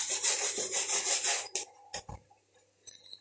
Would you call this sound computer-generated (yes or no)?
no